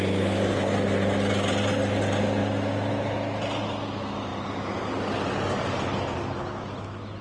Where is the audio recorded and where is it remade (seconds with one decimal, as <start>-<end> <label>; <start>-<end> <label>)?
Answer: 0.0-7.2 recorded